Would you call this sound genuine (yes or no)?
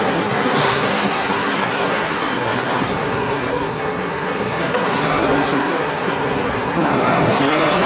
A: no